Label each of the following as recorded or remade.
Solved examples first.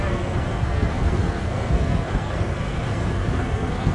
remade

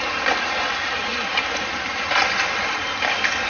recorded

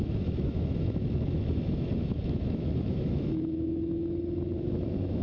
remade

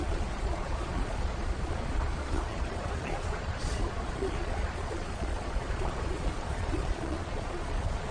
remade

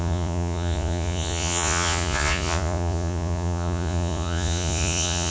remade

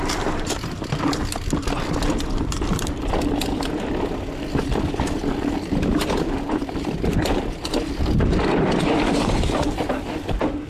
remade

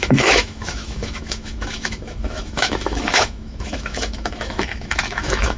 remade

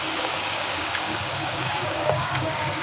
remade